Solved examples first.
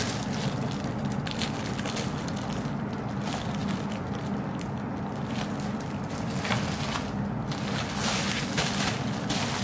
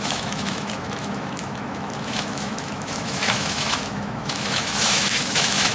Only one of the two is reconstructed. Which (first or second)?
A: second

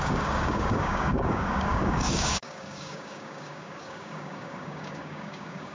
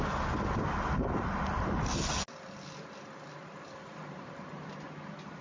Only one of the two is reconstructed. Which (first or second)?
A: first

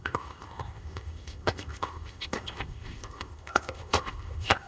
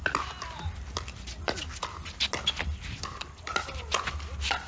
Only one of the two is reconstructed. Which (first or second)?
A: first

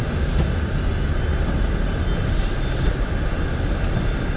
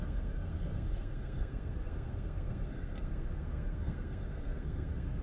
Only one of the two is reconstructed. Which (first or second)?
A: second